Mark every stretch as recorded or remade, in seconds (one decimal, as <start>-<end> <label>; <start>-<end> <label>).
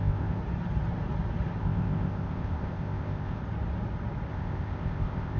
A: 0.0-0.4 remade; 0.4-1.6 recorded; 1.6-3.4 remade; 3.4-4.3 recorded; 4.3-5.4 remade